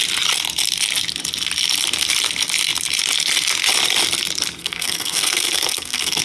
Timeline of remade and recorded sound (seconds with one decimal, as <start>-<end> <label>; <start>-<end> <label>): 0.0-4.6 recorded; 4.6-6.2 remade